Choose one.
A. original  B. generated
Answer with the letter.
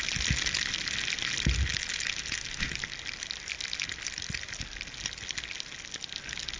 A